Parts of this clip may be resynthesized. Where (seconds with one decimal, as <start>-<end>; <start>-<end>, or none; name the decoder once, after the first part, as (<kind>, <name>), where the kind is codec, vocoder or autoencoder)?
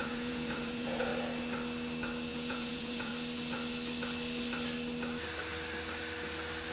0.0-1.1 (vocoder, Vocos); 2.3-3.1